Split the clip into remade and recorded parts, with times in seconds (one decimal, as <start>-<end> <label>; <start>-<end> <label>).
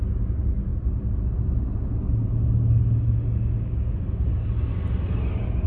0.0-5.7 recorded